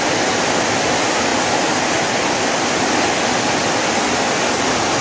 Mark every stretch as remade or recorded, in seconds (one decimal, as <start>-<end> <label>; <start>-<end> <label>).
0.0-5.0 recorded